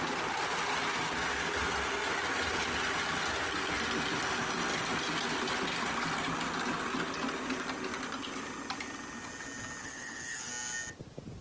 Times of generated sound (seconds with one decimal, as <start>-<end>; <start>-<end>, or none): 9.8-10.5